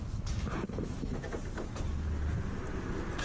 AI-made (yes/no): no